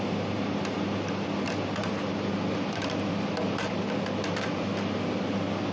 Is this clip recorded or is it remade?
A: recorded